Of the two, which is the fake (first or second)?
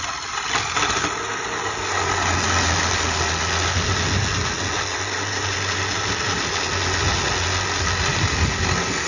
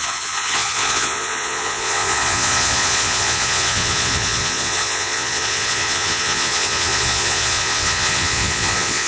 second